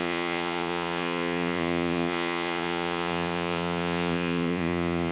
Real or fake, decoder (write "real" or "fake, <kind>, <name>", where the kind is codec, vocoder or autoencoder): fake, vocoder, Vocos